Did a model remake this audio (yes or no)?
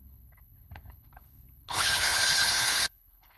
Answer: yes